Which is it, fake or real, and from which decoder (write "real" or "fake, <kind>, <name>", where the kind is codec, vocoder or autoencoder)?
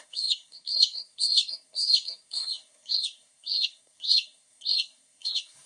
fake, codec, SNAC